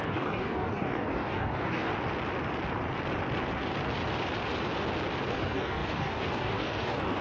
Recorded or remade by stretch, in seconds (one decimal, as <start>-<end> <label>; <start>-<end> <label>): 0.0-1.9 remade; 1.9-5.3 recorded; 5.3-7.2 remade